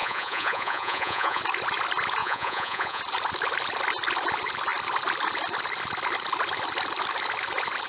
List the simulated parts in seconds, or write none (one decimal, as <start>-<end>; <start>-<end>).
0.0-1.4; 2.2-3.0